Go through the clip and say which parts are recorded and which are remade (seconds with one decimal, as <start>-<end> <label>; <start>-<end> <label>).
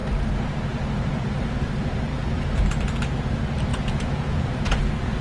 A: 0.0-3.7 recorded; 3.7-4.8 remade; 4.8-5.2 recorded